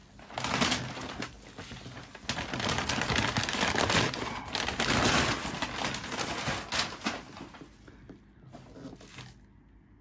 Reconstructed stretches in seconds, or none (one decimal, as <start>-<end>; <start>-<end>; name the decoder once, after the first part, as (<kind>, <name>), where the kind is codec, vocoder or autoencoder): none